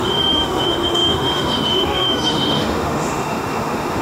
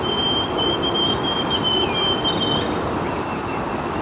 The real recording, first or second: second